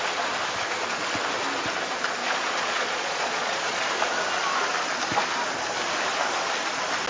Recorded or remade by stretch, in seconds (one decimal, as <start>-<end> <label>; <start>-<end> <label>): 0.0-2.2 recorded; 2.2-3.8 remade; 3.8-7.1 recorded